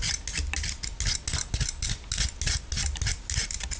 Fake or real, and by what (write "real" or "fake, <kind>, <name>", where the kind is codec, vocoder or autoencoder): real